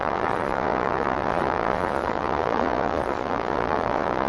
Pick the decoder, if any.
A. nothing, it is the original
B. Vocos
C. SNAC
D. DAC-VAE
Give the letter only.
B